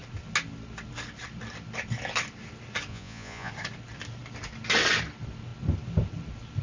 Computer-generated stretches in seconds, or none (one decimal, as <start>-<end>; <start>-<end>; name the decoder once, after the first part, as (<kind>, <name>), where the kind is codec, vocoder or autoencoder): 2.9-3.5 (vocoder, Vocos)